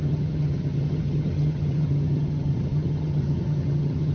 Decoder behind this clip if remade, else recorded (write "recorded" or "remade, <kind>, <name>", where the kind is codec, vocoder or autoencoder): remade, vocoder, HiFi-GAN